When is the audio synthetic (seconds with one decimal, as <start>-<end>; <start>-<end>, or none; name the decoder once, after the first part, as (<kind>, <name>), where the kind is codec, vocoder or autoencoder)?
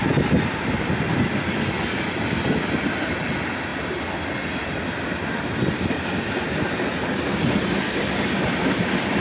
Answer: none